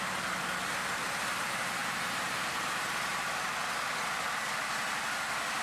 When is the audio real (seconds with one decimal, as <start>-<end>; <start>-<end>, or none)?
0.0-5.6